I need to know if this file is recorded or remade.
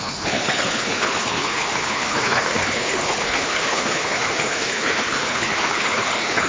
remade